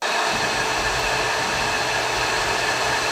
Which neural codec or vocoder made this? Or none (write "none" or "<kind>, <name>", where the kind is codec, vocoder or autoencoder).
none